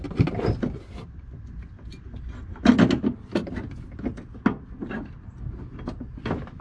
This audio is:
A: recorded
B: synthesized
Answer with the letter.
A